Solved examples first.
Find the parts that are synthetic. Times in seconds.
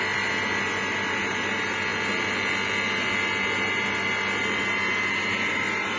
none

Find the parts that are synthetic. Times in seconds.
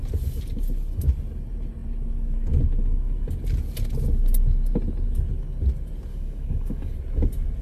6.1-6.9 (codec, DAC)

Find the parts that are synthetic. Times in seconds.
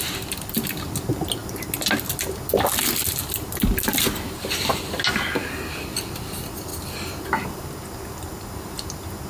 none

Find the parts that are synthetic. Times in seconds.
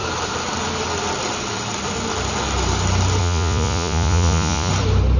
3.2-4.7 (vocoder, Vocos)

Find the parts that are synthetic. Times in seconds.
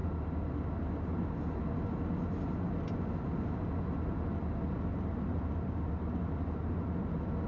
4.9-6.2 (vocoder, BigVGAN v2)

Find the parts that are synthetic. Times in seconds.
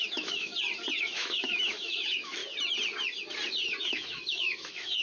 0.0-0.5 (autoencoder, DAC-VAE); 1.0-2.4; 3.8-5.0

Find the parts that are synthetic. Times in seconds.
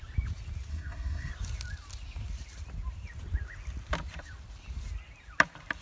0.7-1.3 (codec, SNAC)